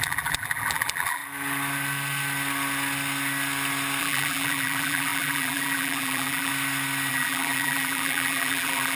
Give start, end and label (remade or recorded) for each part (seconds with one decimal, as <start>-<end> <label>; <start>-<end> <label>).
0.0-1.2 remade; 1.2-4.0 recorded; 4.0-6.5 remade; 6.5-7.1 recorded; 7.1-9.0 remade